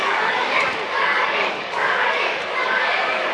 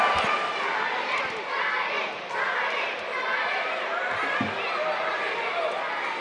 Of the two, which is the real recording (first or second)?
second